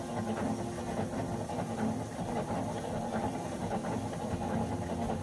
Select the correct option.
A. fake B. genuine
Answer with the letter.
B